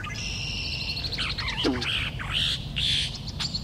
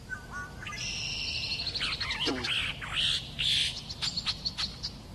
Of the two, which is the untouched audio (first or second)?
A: second